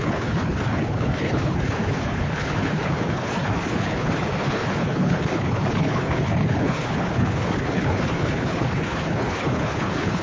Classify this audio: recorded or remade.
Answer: remade